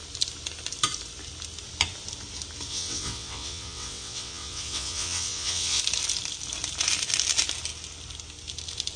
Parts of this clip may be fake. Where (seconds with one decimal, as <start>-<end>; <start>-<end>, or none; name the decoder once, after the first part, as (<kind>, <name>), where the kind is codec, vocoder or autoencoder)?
2.7-5.8 (vocoder, WaveNeXt)